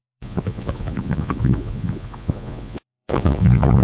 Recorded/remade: remade